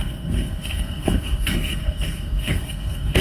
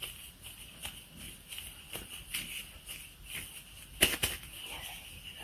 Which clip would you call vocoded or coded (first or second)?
first